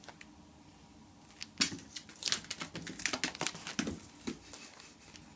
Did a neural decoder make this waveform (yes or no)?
no